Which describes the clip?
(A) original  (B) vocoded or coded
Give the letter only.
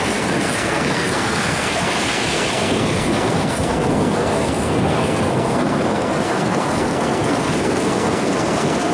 B